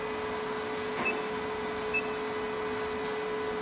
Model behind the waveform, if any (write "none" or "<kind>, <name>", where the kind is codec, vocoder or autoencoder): none